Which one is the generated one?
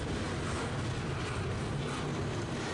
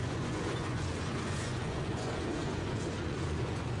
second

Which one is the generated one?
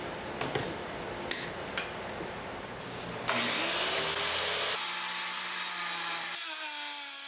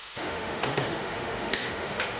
second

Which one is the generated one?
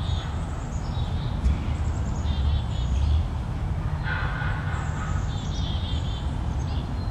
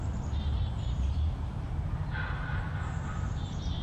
second